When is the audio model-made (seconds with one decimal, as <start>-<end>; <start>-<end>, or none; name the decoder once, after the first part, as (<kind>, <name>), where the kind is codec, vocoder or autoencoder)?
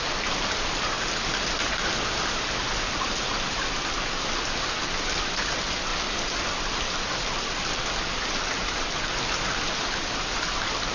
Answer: none